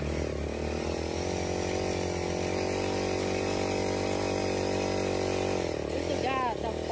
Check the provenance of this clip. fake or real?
real